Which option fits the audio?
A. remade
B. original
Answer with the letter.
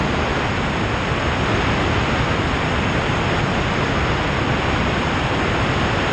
B